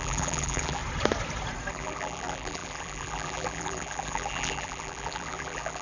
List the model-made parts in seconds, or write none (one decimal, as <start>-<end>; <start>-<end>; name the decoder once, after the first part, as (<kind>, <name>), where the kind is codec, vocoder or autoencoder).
0.0-0.8 (vocoder, BigVGAN v2); 1.7-5.8